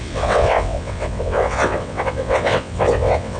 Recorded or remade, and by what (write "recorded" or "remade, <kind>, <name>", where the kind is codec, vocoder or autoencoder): remade, vocoder, WaveNeXt